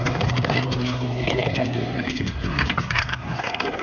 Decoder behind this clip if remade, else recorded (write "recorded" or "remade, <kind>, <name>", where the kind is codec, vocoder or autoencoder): remade, codec, SNAC